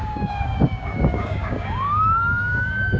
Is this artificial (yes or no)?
yes